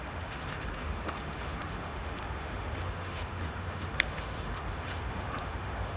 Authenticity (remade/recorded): remade